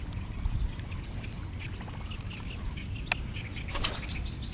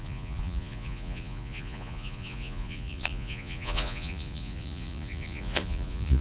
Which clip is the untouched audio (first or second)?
first